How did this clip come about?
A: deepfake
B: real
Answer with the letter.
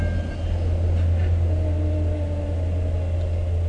B